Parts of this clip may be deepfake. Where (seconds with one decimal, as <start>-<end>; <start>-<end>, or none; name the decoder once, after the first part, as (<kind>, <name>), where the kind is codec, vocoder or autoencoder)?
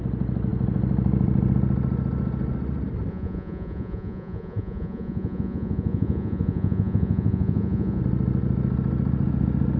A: 3.1-8.0 (vocoder, Vocos)